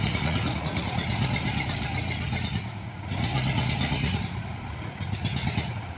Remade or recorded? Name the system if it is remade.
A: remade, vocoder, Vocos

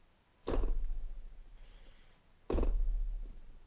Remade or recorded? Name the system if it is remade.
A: recorded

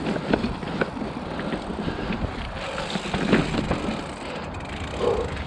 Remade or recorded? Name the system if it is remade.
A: recorded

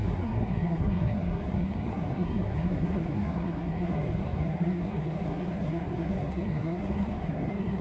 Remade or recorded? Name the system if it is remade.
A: remade, codec, SNAC